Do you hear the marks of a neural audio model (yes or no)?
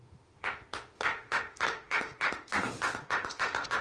yes